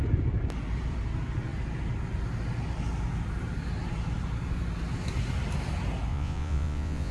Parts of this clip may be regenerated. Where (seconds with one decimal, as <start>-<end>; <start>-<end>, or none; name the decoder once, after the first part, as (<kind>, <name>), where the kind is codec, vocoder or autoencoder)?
6.1-7.1 (vocoder, Vocos)